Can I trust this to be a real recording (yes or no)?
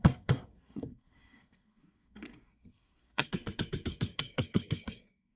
no